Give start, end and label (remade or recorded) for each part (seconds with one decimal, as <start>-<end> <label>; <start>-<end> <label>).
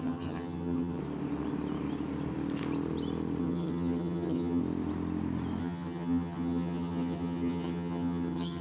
0.0-1.0 remade; 1.0-3.4 recorded; 3.4-4.6 remade; 4.6-5.6 recorded; 5.6-8.6 remade